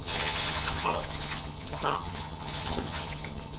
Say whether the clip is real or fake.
fake